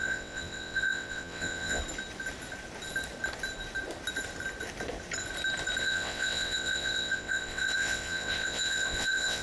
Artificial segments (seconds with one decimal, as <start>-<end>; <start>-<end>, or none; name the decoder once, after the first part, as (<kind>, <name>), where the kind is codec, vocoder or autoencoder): 0.0-1.8 (vocoder, WaveNeXt); 5.8-9.4